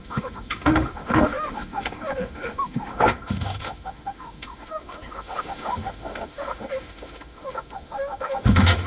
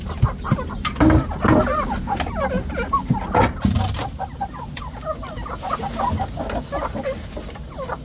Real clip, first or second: second